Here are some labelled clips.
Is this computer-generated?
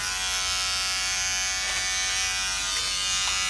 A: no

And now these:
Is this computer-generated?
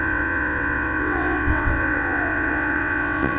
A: yes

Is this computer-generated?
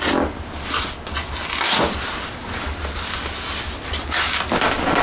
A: no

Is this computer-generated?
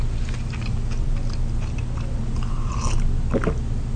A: no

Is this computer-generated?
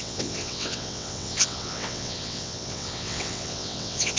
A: yes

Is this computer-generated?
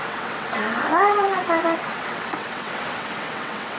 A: yes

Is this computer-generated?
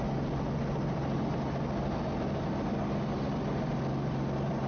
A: no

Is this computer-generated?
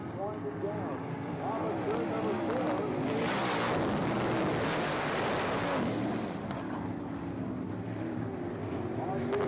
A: no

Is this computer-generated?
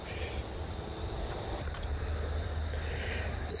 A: no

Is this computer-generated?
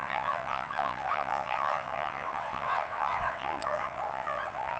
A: yes